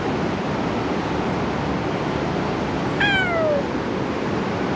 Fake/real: real